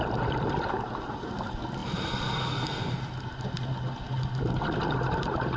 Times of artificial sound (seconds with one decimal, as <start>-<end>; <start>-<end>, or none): none